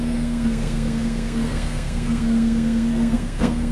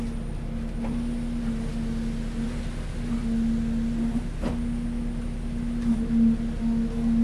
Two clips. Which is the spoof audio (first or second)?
first